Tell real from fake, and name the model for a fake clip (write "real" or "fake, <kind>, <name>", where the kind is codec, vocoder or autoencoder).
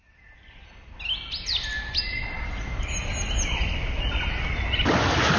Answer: real